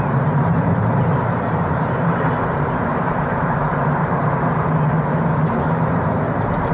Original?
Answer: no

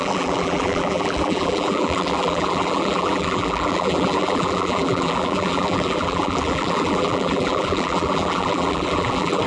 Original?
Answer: no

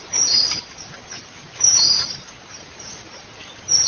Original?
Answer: no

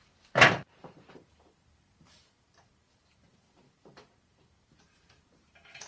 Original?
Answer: no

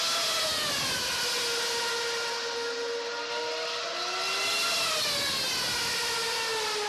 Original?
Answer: yes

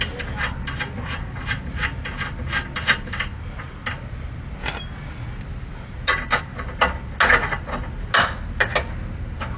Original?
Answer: yes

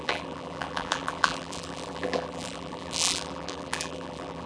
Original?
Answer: no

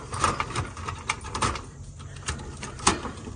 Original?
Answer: no